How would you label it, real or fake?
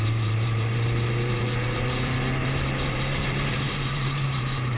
fake